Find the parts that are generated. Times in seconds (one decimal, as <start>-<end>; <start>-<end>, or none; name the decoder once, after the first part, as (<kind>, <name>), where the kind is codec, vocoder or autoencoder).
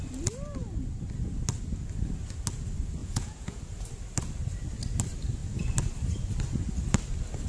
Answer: 3.0-3.6 (vocoder, Vocos)